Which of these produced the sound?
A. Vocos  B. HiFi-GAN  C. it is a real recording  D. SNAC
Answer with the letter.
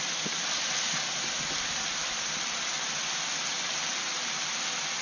C